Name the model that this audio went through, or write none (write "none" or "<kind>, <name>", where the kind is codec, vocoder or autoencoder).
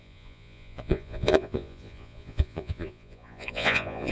vocoder, Vocos